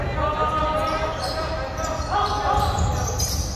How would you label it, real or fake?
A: real